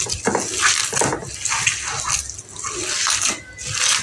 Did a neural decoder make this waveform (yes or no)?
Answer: no